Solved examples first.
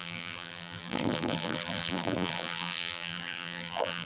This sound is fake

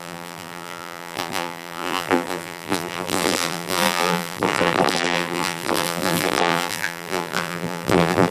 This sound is fake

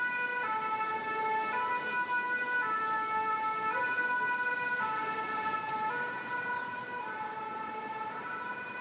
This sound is fake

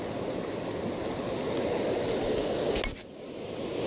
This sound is real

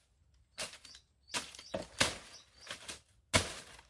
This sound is real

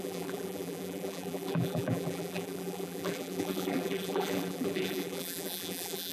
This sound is fake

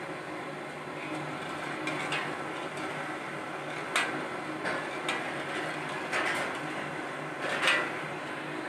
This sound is real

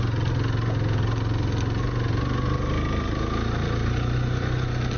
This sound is real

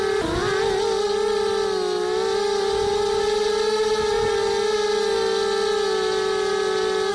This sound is real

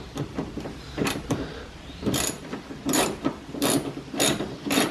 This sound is fake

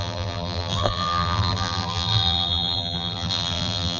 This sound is fake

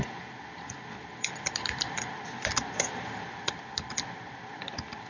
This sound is fake